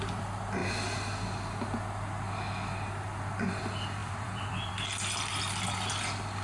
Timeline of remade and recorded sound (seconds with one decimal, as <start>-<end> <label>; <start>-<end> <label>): 0.0-4.0 recorded; 4.0-4.7 remade; 4.7-6.4 recorded